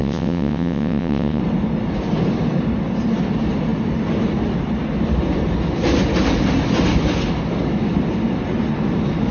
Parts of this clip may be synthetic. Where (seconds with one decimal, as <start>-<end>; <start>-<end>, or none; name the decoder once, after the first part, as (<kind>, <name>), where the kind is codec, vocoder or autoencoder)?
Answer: 0.0-1.4 (vocoder, WaveNeXt)